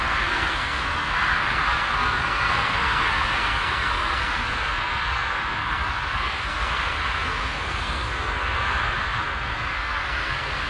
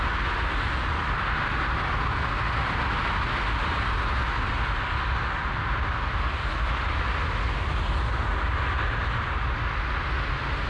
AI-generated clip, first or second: first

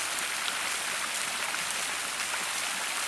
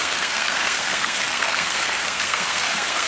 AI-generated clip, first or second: second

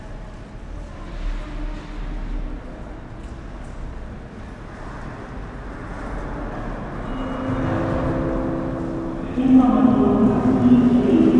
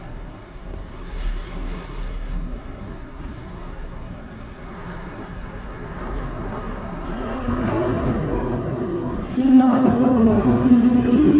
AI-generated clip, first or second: second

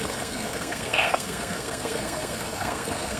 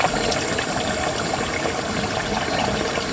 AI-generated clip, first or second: first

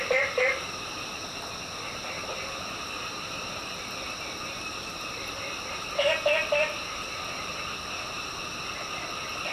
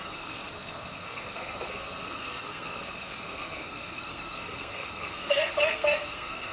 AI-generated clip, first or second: second